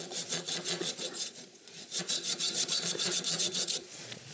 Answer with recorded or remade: remade